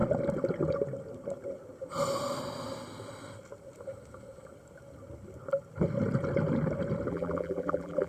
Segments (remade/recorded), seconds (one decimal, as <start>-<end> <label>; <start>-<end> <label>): 0.0-7.1 recorded; 7.1-8.1 remade